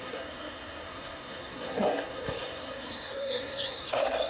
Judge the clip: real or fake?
fake